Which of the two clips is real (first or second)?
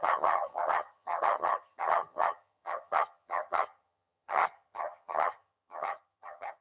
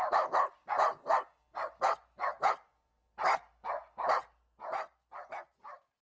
second